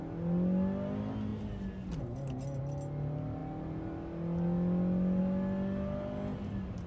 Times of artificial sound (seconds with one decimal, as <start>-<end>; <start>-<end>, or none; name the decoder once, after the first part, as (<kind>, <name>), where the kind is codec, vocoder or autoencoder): none